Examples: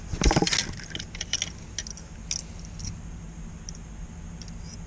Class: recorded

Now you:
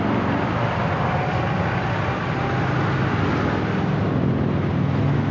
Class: recorded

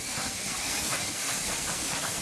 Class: remade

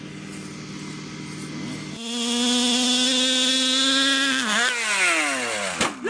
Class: recorded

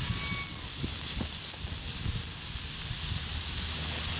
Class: recorded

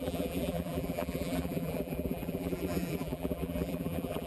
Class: remade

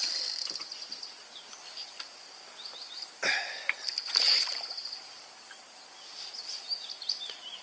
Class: recorded